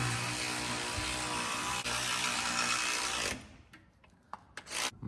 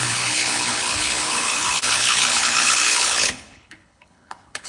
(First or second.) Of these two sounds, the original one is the first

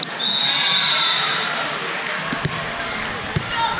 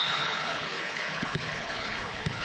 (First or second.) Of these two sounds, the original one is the first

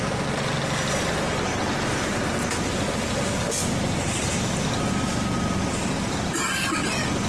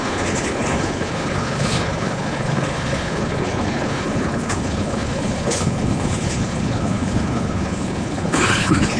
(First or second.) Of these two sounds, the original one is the first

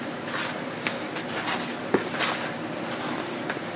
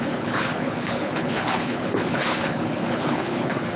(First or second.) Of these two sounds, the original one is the first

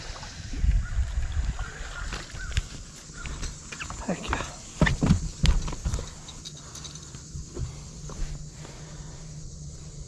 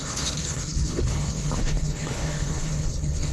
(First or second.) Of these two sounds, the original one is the first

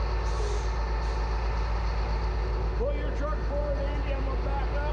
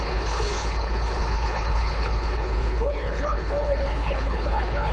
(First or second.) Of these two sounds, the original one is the first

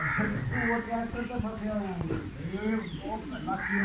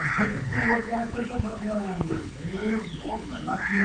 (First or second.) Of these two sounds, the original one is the first